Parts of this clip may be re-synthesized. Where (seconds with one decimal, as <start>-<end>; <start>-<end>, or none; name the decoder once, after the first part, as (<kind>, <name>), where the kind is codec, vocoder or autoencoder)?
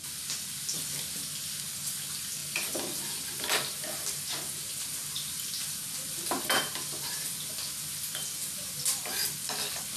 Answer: none